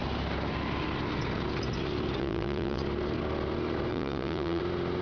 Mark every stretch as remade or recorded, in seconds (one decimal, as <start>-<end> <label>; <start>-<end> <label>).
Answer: 0.0-2.2 recorded; 2.2-2.8 remade; 2.8-3.9 recorded; 3.9-4.6 remade; 4.6-5.0 recorded